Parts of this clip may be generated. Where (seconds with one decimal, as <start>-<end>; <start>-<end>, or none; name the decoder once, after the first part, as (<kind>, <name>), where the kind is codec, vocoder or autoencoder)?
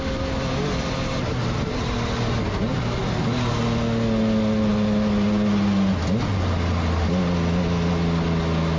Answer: none